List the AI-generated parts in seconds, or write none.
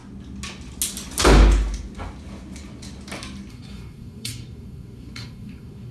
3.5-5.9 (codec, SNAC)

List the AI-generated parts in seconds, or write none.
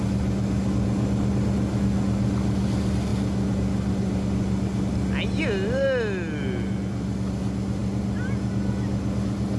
none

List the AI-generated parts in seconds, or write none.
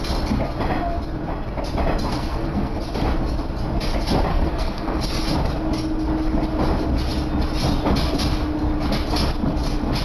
2.1-2.8 (codec, SNAC); 4.3-5.0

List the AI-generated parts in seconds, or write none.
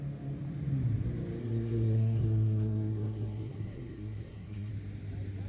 1.4-4.7 (codec, SNAC)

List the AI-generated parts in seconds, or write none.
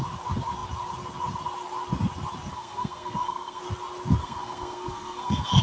2.5-3.6 (codec, SNAC); 4.2-5.6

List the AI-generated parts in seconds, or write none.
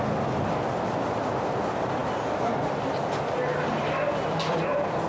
none